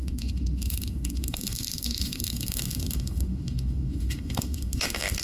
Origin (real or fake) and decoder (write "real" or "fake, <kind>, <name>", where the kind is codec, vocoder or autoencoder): fake, autoencoder, DAC-VAE